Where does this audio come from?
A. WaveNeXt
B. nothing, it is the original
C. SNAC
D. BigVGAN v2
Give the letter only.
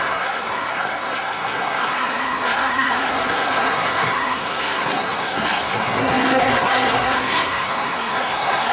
C